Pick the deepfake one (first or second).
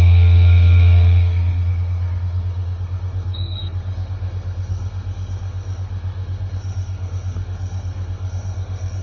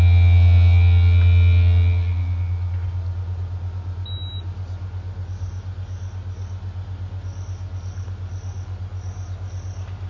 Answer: first